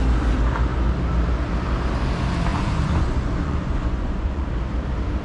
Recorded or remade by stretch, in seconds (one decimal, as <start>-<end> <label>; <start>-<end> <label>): 0.0-2.5 recorded; 2.5-4.5 remade; 4.5-5.2 recorded